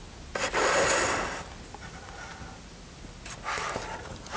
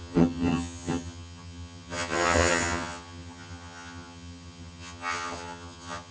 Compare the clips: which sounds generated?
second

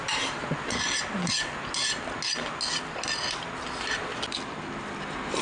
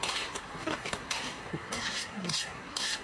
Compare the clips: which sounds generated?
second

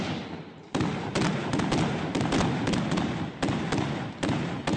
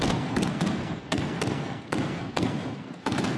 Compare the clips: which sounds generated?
second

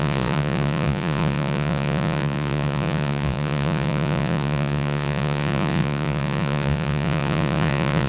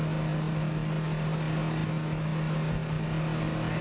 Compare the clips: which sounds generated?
first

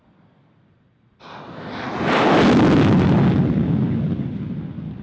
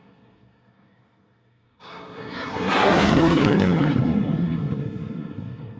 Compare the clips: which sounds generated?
second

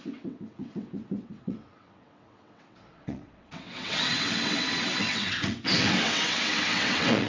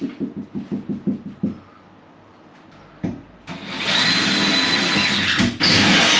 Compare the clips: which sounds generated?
first